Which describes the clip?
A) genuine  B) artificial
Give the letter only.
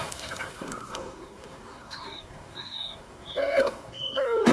B